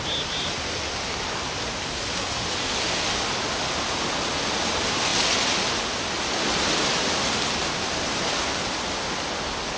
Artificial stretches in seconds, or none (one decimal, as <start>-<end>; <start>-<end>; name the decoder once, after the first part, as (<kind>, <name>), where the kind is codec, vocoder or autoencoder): none